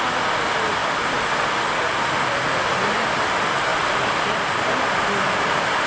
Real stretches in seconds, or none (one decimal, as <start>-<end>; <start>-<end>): 0.0-0.8; 1.6-3.7; 5.5-5.9